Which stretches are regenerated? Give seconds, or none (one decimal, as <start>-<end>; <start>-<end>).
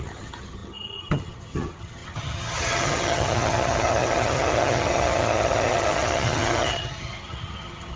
0.0-8.0